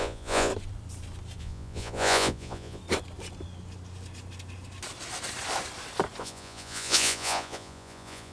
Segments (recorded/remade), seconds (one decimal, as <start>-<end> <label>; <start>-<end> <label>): 0.0-0.5 remade; 0.5-1.4 recorded; 1.4-2.8 remade; 2.8-6.2 recorded; 6.2-8.3 remade